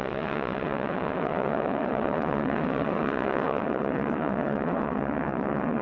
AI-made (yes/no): yes